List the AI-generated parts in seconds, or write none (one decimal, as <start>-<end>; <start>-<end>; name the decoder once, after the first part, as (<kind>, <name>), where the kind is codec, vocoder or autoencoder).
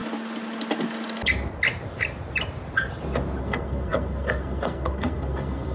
3.4-5.7 (codec, SNAC)